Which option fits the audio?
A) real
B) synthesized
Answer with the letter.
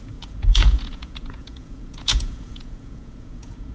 B